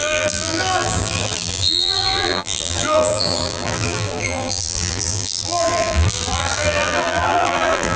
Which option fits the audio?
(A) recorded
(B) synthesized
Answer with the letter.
B